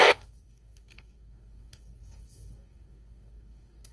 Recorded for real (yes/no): no